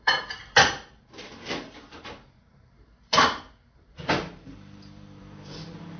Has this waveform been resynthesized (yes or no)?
yes